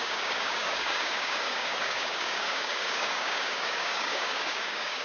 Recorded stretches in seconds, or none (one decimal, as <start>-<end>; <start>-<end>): none